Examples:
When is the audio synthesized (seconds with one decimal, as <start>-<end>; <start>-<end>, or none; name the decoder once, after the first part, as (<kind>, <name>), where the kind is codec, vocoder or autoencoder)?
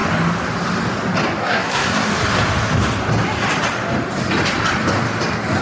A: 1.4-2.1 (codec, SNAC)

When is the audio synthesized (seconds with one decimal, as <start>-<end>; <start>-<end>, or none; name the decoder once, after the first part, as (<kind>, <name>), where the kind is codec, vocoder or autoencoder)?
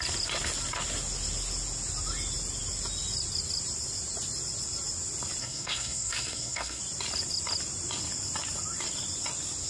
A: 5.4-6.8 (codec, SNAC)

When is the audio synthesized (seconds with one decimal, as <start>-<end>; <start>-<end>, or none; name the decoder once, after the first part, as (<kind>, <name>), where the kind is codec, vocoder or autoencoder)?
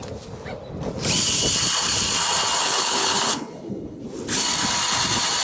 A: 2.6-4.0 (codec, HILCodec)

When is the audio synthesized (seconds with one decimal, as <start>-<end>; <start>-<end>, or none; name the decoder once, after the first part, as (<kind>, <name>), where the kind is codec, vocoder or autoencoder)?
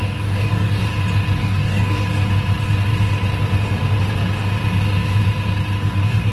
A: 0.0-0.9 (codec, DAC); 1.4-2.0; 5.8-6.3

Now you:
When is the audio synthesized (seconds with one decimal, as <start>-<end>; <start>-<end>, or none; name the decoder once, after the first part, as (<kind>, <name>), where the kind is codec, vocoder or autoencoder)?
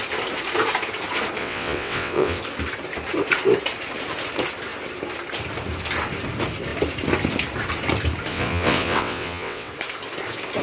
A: 1.4-2.4 (vocoder, WaveNeXt); 8.3-9.7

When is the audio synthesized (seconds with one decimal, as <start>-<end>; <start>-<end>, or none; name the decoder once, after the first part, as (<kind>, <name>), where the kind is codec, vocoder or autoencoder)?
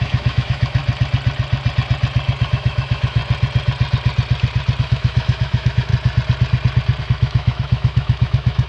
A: 0.0-0.8 (autoencoder, DAC-VAE); 2.5-3.2; 4.8-5.9; 7.0-8.7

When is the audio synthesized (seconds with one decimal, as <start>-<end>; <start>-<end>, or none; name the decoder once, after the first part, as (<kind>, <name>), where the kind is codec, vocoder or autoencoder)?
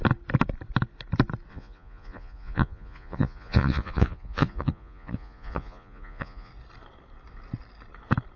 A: 1.5-6.5 (vocoder, Vocos)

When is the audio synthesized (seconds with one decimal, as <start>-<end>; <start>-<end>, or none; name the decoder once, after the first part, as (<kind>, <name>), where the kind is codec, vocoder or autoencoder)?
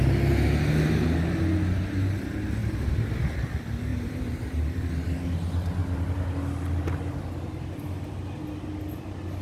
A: 2.6-3.1 (vocoder, BigVGAN v2); 3.9-4.6; 5.8-6.4